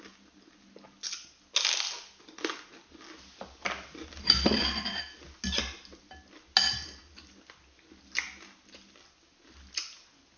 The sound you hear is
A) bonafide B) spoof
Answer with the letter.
A